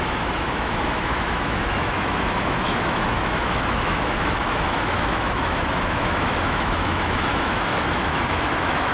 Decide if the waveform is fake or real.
fake